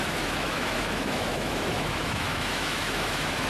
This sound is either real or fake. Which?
fake